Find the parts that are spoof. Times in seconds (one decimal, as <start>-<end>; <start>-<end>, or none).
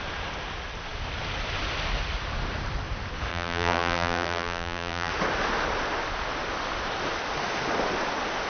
3.3-5.1